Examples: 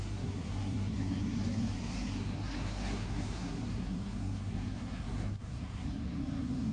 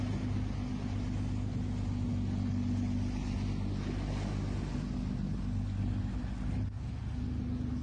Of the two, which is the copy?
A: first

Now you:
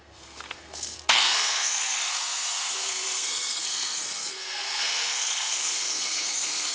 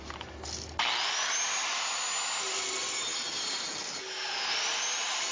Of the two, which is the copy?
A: first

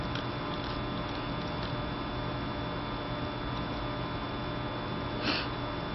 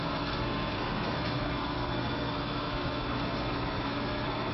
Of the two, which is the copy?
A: second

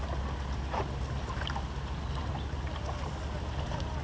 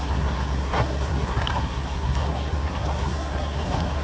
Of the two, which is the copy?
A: second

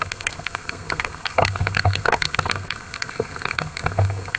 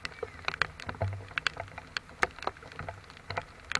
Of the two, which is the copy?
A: first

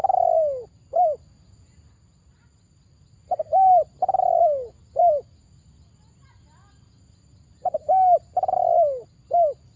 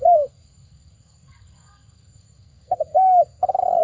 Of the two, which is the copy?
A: second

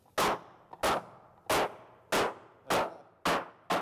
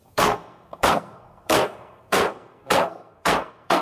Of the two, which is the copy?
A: second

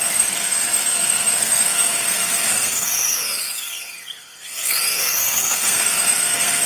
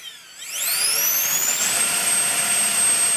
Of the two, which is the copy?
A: first